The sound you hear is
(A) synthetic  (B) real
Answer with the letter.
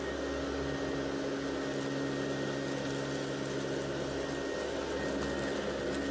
B